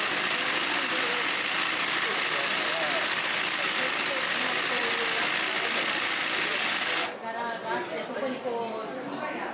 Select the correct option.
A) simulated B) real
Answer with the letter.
B